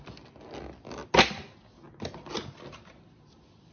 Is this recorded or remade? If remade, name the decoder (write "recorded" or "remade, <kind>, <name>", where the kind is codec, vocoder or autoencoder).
recorded